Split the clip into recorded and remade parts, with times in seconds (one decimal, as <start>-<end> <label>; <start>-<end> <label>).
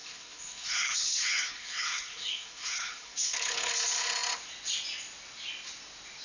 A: 0.0-3.7 remade; 3.7-6.2 recorded